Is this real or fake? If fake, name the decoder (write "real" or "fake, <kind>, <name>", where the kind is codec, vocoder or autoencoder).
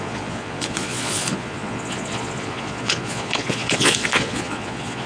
fake, vocoder, Vocos